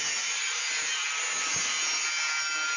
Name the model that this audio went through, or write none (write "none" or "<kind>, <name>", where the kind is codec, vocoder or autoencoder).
none